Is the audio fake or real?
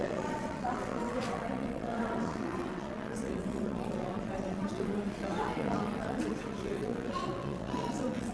fake